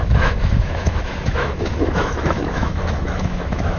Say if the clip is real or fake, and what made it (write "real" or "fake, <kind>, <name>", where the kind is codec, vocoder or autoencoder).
fake, autoencoder, DAC-VAE